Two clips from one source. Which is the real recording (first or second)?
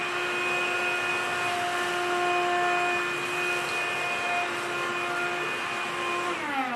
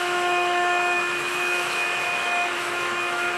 first